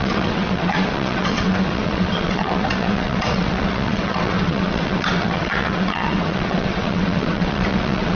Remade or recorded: remade